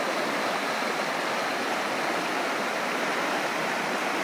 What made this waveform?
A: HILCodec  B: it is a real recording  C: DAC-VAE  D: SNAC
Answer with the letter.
B